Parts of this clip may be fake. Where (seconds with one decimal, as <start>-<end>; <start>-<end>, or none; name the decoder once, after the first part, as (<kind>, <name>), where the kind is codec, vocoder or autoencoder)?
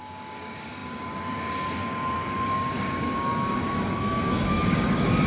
0.0-5.3 (codec, DAC)